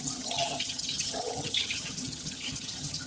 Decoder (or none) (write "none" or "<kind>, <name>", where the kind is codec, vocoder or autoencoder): vocoder, HiFi-GAN